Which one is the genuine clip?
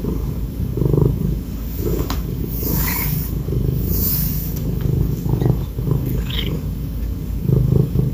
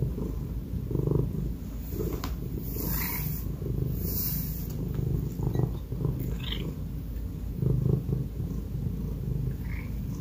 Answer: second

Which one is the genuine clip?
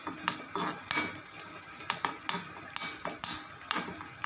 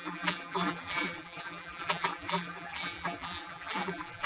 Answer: first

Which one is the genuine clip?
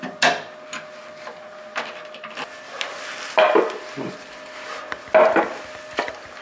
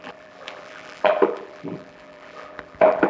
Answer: first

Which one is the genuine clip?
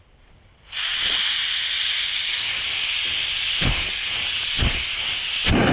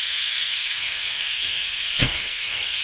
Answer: first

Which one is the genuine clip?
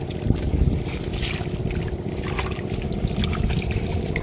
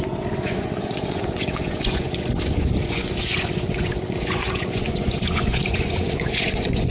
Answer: first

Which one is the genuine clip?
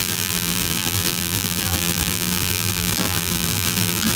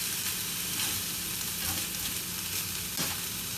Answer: second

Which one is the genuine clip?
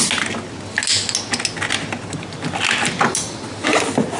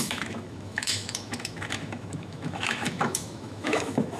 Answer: first